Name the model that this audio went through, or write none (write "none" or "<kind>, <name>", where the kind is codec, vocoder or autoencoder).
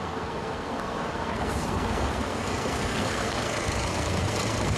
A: codec, SNAC